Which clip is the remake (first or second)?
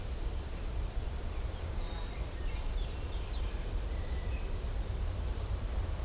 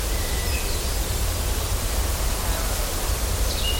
first